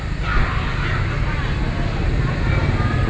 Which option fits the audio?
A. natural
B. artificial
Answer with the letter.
A